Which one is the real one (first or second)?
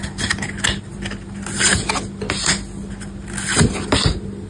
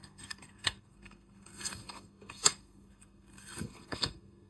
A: first